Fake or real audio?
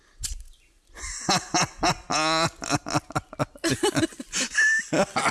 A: real